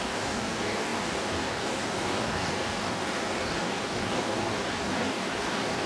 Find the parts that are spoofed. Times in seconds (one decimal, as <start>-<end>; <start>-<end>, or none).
0.0-5.9